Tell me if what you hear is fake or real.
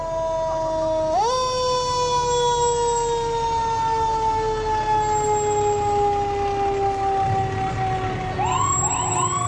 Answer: real